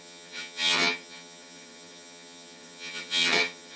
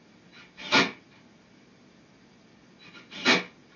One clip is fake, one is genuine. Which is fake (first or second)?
first